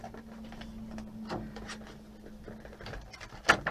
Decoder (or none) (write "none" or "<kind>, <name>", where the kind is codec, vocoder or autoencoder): none